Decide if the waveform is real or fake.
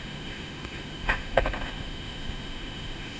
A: fake